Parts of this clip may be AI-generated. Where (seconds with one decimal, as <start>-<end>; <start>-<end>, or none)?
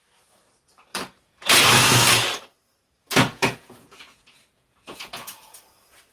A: 0.9-1.6; 3.0-5.6